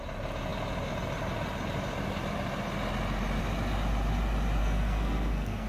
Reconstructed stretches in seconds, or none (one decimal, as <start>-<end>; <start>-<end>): 4.6-5.7